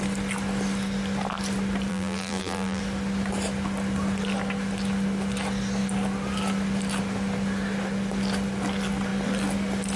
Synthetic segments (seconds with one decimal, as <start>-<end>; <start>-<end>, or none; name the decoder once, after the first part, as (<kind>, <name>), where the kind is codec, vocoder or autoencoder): 1.9-2.8 (vocoder, BigVGAN v2)